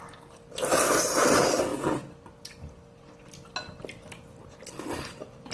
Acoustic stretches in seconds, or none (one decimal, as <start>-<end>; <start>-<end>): 0.0-5.5